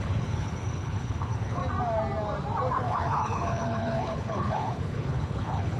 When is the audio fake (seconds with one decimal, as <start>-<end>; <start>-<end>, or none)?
0.0-1.6; 2.8-5.8